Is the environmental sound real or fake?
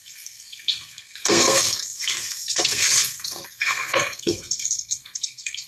fake